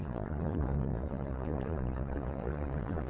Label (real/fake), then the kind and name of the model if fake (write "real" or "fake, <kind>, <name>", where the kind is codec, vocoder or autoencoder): fake, vocoder, Vocos